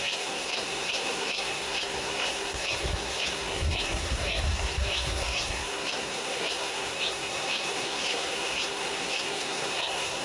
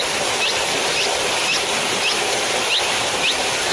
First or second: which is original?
second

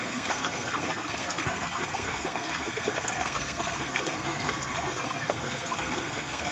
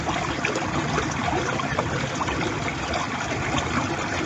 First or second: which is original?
second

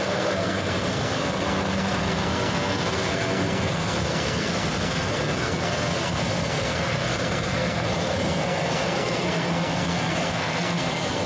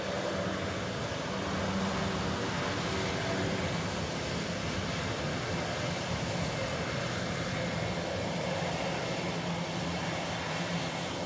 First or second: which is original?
second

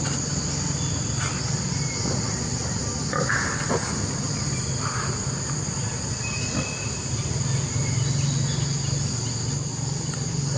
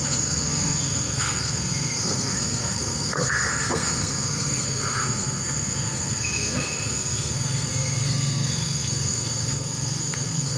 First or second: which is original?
first